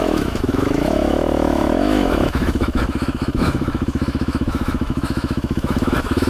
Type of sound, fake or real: fake